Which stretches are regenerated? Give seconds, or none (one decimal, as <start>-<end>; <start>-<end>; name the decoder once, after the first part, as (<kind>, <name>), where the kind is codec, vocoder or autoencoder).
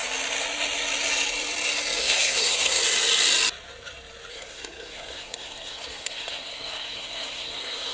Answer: 2.0-2.8 (codec, SNAC); 4.3-7.9